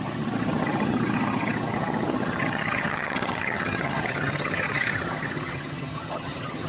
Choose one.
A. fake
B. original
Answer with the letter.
A